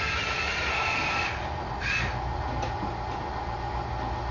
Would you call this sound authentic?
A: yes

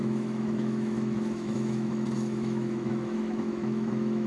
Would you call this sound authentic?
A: no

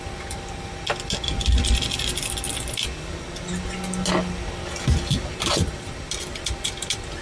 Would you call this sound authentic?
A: yes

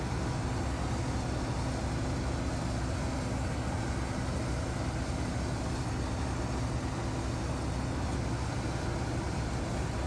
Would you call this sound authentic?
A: yes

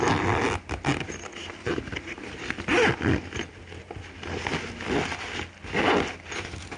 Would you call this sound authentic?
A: yes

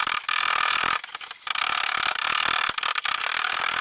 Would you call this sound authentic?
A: yes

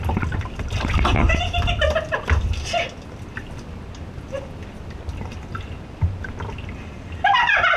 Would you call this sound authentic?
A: yes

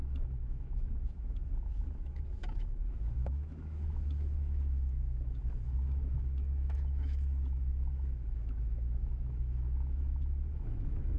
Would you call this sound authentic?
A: no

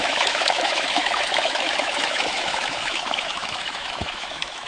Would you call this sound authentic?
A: no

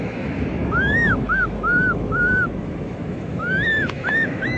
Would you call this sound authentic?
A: no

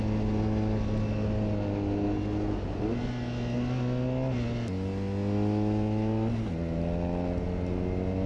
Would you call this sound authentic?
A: yes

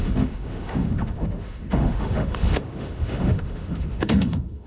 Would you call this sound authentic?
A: no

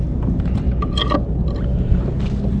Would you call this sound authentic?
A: yes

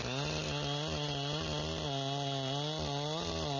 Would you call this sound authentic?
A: yes